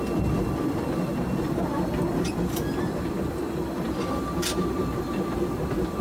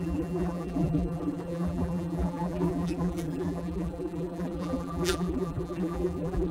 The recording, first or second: first